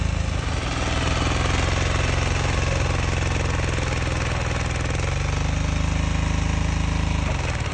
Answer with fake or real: real